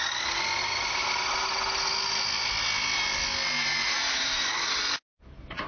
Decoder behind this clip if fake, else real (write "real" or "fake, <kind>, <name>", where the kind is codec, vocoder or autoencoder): real